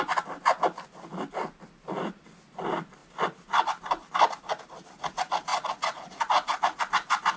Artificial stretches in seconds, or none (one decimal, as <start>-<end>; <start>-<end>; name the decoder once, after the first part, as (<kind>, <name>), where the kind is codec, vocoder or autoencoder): 5.5-6.8 (vocoder, Vocos)